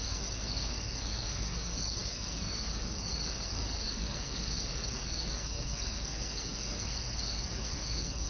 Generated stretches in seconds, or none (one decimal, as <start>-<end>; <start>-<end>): 0.0-8.3